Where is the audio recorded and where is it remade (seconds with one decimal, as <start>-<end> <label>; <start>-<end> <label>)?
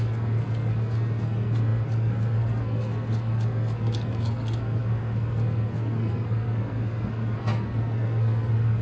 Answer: 0.0-8.8 remade